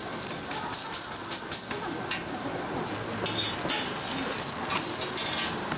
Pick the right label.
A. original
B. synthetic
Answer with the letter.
A